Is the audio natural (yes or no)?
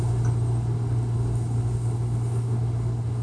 yes